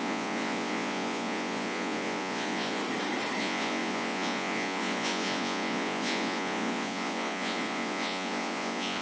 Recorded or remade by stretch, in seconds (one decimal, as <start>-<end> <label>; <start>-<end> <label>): 0.0-2.8 remade; 2.8-3.4 recorded; 3.4-9.0 remade